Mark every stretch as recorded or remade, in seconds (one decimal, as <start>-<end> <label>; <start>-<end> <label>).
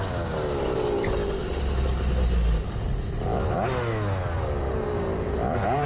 0.0-5.9 recorded